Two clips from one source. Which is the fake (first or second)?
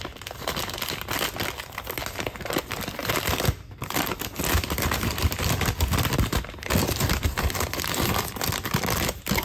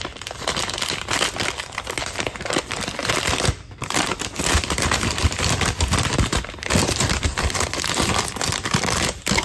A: second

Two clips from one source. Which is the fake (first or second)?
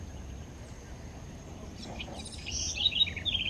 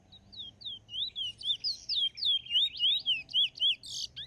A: first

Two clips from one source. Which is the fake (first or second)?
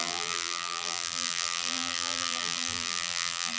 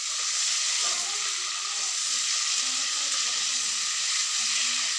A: first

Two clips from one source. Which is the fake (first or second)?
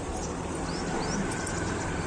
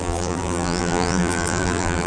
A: second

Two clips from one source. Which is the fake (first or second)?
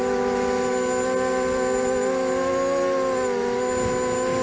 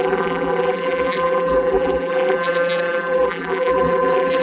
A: second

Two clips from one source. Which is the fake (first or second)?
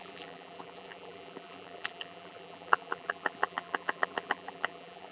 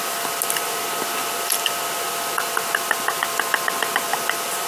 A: first